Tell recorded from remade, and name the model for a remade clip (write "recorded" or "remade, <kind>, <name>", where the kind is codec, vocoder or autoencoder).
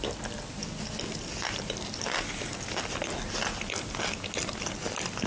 recorded